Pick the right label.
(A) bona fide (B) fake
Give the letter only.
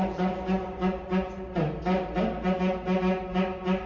A